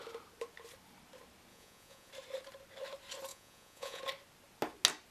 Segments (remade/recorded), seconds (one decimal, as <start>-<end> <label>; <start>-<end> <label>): 0.0-1.5 recorded; 1.5-2.1 remade; 2.1-3.3 recorded; 3.3-4.0 remade; 4.0-5.1 recorded